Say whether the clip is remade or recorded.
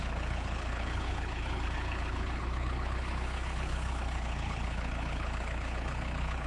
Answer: remade